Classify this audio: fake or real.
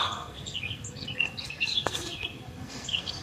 fake